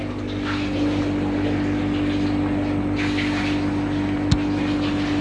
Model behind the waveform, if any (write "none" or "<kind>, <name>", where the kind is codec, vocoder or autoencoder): none